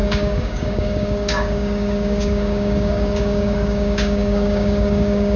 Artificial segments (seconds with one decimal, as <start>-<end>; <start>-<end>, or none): 0.0-5.4